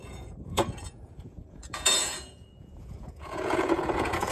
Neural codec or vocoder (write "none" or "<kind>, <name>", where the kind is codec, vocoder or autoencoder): vocoder, Vocos